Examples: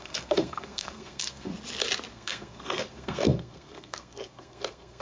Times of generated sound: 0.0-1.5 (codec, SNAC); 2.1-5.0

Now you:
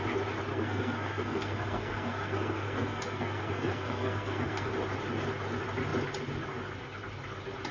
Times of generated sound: 0.5-4.7 (codec, SNAC)

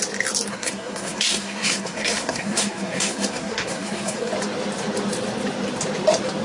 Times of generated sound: 0.5-4.3 (codec, SNAC)